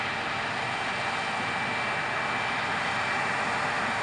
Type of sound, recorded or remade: recorded